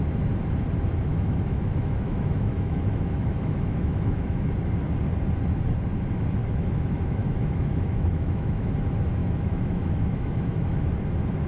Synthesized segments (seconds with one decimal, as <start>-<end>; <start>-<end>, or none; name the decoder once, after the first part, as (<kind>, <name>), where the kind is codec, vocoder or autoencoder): 1.1-4.5 (autoencoder, DAC-VAE); 6.4-8.7; 9.2-10.9